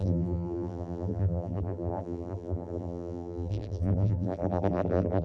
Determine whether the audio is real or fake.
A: fake